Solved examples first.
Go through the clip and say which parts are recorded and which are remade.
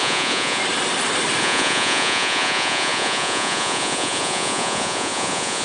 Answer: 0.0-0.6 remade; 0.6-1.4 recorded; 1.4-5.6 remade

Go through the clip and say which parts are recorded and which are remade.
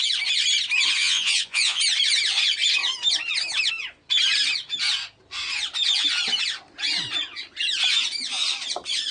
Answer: 0.0-1.0 recorded; 1.0-1.8 remade; 1.8-9.1 recorded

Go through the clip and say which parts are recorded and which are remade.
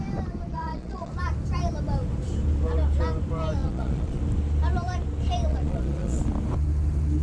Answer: 0.0-0.5 recorded; 0.5-1.1 remade; 1.1-3.6 recorded; 3.6-4.2 remade; 4.2-5.5 recorded; 5.5-6.2 remade; 6.2-7.2 recorded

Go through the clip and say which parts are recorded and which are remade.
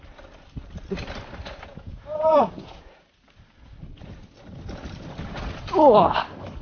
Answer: 0.0-1.7 recorded; 1.7-2.9 remade; 2.9-6.6 recorded